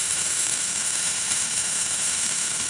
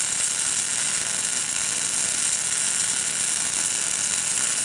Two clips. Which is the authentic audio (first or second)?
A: second